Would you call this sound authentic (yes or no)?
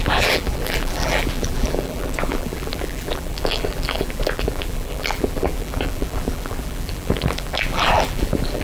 no